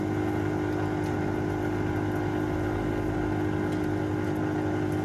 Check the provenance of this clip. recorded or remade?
recorded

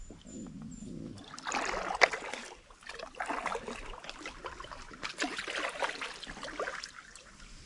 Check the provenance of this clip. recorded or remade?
recorded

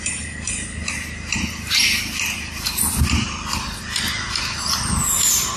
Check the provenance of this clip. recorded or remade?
recorded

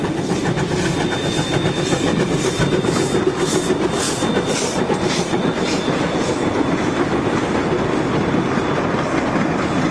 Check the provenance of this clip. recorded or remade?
recorded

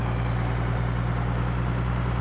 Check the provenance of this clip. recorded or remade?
recorded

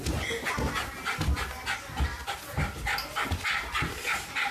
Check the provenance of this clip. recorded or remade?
recorded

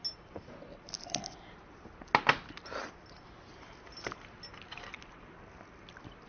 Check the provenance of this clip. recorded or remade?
recorded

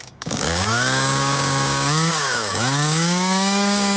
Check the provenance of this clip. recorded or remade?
remade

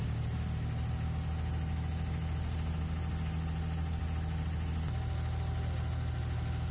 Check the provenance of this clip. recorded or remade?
recorded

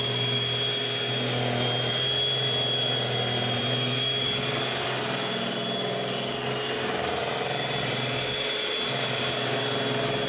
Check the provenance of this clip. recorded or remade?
recorded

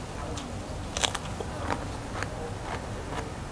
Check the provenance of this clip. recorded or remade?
recorded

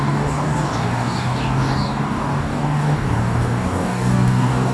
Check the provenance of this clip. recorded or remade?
remade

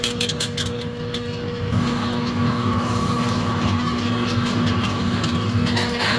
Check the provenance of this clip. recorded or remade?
remade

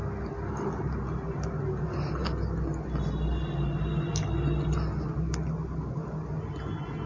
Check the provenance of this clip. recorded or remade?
recorded